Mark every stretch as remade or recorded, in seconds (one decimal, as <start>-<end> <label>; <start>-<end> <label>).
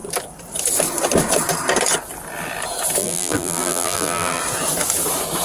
0.0-3.0 recorded; 3.0-4.4 remade; 4.4-5.4 recorded